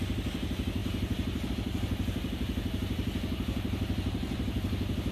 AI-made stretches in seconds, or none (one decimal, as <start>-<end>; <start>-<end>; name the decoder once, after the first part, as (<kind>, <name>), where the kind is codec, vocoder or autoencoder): none